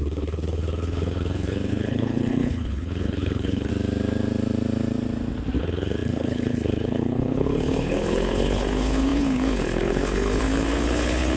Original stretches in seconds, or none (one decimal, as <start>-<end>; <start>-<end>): 3.7-5.6